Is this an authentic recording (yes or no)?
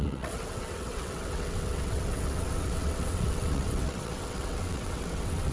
no